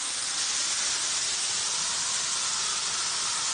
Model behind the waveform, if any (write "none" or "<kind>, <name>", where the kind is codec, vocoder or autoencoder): none